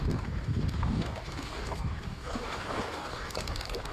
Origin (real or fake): fake